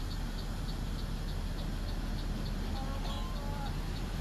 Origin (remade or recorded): recorded